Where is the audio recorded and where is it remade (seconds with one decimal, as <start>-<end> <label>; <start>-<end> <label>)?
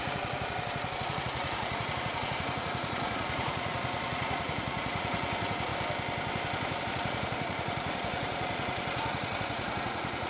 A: 0.0-5.7 remade; 5.7-6.8 recorded; 6.8-10.3 remade